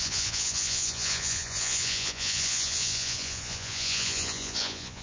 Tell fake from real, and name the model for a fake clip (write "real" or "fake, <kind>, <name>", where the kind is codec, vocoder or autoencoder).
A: fake, vocoder, Vocos